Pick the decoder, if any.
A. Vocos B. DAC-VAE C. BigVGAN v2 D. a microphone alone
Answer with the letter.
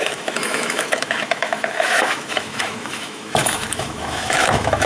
B